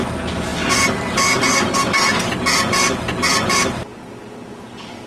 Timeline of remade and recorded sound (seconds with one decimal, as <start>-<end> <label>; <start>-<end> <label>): 0.0-5.1 recorded